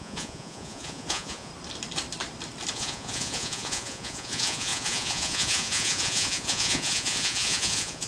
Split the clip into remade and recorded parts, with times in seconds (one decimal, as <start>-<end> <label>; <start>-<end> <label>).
0.0-1.5 remade; 1.5-2.7 recorded; 2.7-8.1 remade

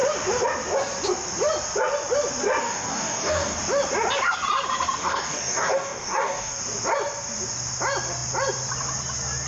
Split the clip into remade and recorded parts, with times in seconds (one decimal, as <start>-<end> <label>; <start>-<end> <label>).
0.0-2.6 recorded; 2.6-3.6 remade; 3.6-5.0 recorded; 5.0-6.6 remade; 6.6-9.5 recorded

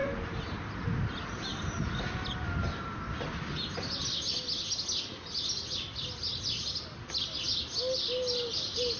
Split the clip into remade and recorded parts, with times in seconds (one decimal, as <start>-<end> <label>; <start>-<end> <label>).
0.0-9.0 recorded

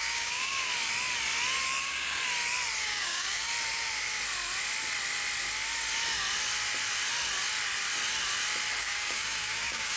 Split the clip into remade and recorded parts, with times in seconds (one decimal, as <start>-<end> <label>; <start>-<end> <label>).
0.0-0.7 remade; 0.7-1.8 recorded; 1.8-2.2 remade; 2.2-2.8 recorded; 2.8-3.5 remade; 3.5-8.8 recorded; 8.8-10.0 remade

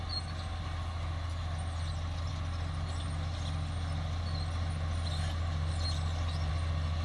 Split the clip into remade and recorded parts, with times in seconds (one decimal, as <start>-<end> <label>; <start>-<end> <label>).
0.0-7.0 recorded

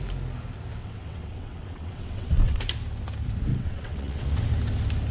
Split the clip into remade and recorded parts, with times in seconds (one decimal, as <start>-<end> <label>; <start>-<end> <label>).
0.0-0.8 recorded; 0.8-2.6 remade; 2.6-3.5 recorded; 3.5-4.5 remade; 4.5-5.1 recorded